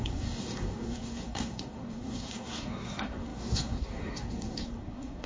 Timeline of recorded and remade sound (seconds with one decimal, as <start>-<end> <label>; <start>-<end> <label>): 0.0-5.3 remade